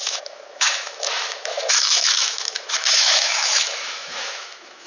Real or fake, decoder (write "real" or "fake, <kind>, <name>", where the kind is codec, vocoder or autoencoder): fake, autoencoder, DAC-VAE